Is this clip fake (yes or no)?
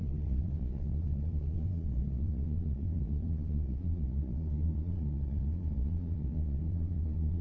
yes